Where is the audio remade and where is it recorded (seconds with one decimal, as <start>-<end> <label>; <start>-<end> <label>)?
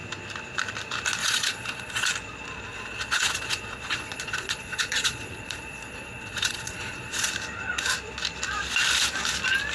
0.0-1.2 recorded; 1.2-2.1 remade; 2.1-2.7 recorded; 2.7-7.3 remade; 7.3-9.7 recorded